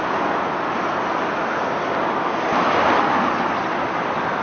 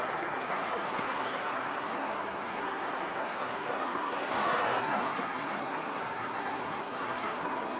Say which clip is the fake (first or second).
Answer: second